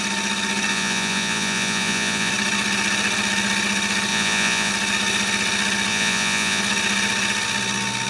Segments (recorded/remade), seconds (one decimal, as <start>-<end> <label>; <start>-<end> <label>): 0.0-0.7 recorded; 0.7-2.3 remade; 2.3-4.1 recorded; 4.1-4.7 remade; 4.7-5.9 recorded; 5.9-6.6 remade; 6.6-8.1 recorded